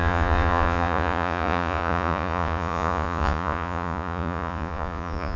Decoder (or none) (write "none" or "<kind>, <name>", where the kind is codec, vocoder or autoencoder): vocoder, Vocos